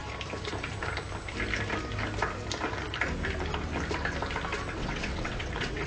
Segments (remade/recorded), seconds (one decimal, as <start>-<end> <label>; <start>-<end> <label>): 0.0-4.8 recorded; 4.8-5.9 remade